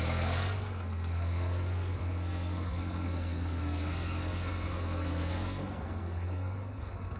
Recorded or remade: remade